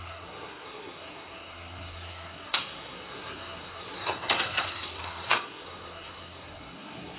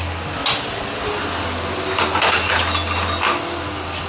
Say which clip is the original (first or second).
second